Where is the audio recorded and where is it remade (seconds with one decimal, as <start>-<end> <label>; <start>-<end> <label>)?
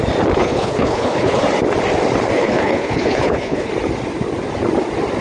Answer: 0.0-0.4 recorded; 0.4-1.4 remade; 1.4-2.3 recorded; 2.3-3.7 remade; 3.7-5.2 recorded